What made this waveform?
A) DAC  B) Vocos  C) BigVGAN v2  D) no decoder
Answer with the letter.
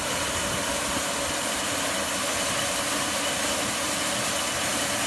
D